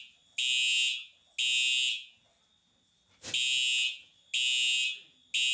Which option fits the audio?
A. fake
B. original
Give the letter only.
B